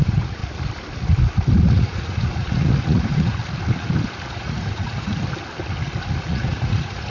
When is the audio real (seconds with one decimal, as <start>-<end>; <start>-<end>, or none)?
0.4-1.6; 3.4-4.3; 5.1-6.0

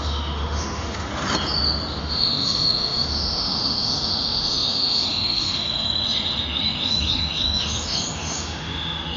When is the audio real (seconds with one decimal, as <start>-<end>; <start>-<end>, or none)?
1.1-2.0

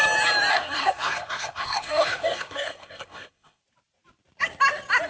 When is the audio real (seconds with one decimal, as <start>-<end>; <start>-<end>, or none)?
0.0-0.5; 3.6-5.1

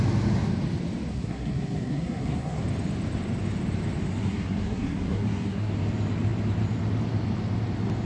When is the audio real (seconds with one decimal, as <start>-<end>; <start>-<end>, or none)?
0.0-1.1; 2.6-4.2; 5.7-8.0